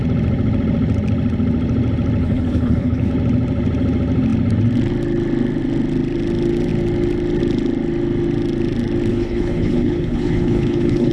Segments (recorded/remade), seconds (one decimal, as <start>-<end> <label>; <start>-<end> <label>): 0.0-2.2 recorded; 2.2-3.1 remade; 3.1-9.1 recorded; 9.1-11.1 remade